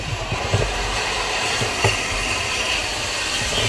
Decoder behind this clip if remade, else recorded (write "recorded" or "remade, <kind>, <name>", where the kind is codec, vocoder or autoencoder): remade, vocoder, BigVGAN v2